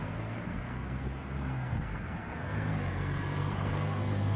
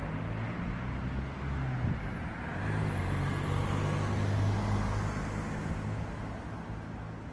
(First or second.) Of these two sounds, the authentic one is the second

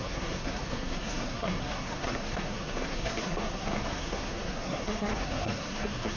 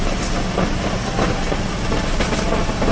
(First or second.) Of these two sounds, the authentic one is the second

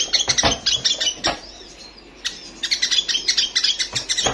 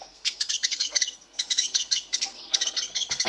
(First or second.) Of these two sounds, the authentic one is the first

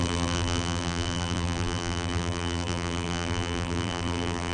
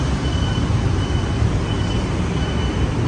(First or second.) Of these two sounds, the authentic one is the second